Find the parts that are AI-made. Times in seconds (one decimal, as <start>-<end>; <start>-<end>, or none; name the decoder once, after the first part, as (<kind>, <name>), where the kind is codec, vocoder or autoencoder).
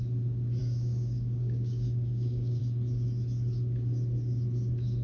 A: 0.6-2.6 (codec, DAC)